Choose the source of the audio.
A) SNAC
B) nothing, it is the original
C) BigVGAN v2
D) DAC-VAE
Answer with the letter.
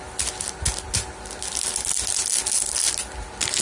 B